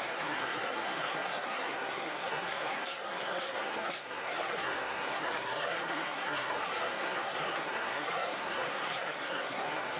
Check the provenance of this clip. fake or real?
fake